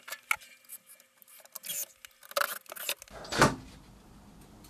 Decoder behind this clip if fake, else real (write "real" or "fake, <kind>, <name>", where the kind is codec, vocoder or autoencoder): real